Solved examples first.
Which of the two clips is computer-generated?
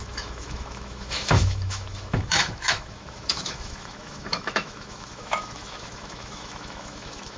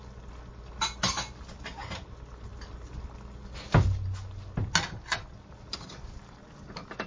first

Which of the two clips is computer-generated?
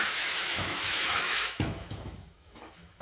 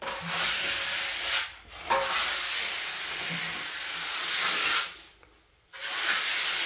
first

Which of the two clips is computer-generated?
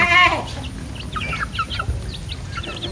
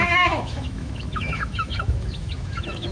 second